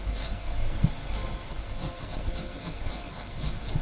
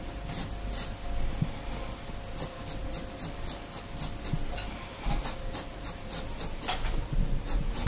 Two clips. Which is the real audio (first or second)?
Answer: second